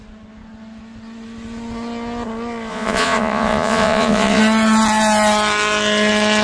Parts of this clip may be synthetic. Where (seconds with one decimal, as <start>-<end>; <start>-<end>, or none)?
2.7-4.4